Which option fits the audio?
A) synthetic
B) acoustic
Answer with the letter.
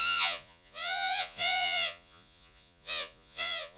A